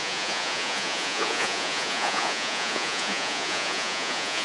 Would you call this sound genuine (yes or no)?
no